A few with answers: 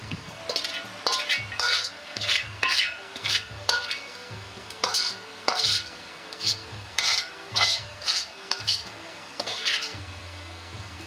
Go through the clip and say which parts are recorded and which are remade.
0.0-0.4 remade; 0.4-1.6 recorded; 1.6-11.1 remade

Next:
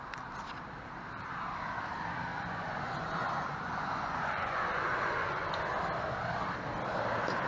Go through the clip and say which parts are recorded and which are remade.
0.0-2.3 recorded; 2.3-5.6 remade; 5.6-7.5 recorded